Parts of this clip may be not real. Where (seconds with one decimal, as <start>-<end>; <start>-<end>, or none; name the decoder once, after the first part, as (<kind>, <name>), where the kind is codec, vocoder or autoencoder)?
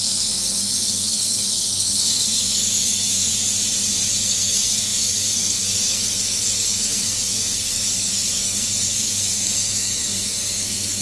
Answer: 0.0-3.3 (codec, SNAC); 4.1-11.0